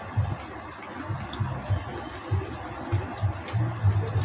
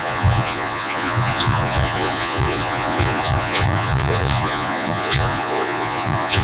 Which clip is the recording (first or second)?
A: first